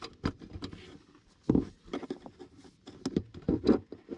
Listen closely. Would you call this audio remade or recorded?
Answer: recorded